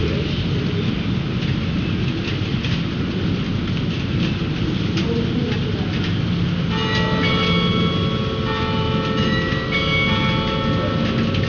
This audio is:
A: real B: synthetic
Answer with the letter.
A